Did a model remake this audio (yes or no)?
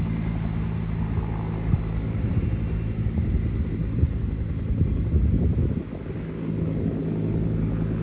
no